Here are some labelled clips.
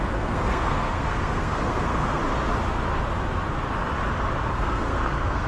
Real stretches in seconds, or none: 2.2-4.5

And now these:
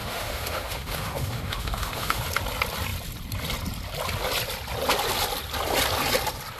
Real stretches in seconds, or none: 2.2-6.6